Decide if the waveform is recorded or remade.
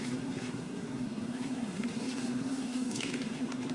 remade